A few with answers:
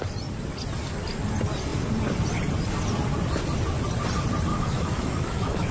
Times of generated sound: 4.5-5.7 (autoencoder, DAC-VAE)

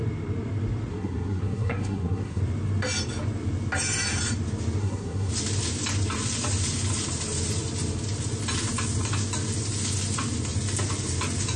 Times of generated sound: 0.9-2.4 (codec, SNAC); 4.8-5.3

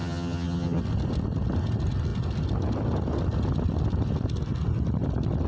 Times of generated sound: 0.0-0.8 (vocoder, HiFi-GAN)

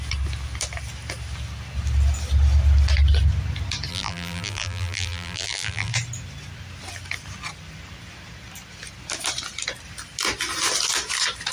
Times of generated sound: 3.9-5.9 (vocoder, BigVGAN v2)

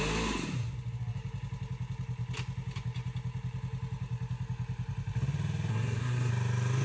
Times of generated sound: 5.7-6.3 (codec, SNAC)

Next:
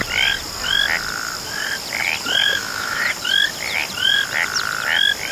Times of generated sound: 2.4-3.0 (autoencoder, DAC-VAE)